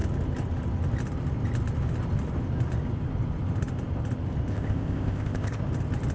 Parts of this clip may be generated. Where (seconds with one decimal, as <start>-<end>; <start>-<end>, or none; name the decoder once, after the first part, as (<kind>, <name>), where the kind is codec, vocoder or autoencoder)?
4.5-5.6 (codec, ZipCodec)